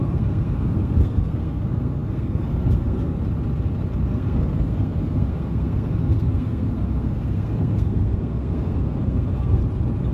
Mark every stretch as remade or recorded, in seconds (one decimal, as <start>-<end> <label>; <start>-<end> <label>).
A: 0.0-3.2 remade; 3.2-4.1 recorded; 4.1-9.6 remade; 9.6-10.1 recorded